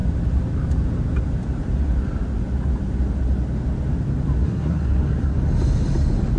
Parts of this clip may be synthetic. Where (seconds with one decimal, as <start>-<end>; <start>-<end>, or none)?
4.4-5.4